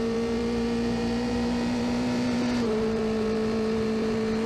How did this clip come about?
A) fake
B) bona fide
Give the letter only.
A